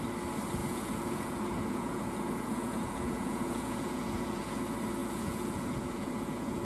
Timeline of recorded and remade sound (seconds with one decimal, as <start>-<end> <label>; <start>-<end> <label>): 0.0-0.6 recorded; 0.6-4.6 remade; 4.6-5.0 recorded; 5.0-6.6 remade